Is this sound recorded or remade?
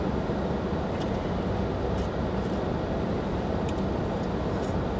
recorded